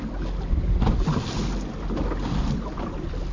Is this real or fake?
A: real